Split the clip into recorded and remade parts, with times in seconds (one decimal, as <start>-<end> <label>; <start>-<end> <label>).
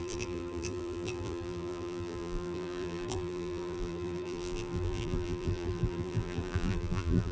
0.0-7.3 remade